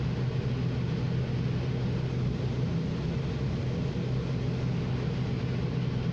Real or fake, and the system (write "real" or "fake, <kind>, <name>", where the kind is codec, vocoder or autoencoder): real